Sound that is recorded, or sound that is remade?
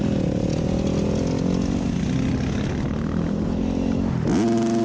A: recorded